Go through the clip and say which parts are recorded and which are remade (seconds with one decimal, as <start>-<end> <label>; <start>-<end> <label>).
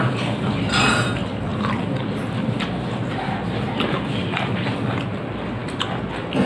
0.0-6.5 recorded